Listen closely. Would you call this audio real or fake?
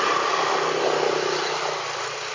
real